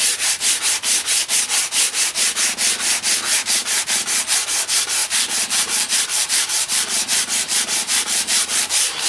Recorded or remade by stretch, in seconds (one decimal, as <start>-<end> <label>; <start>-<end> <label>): 0.0-3.6 recorded; 3.6-4.1 remade; 4.1-5.0 recorded; 5.0-9.1 remade